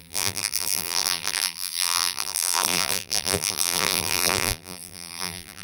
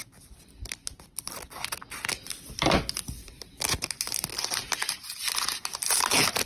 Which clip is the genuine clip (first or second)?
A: second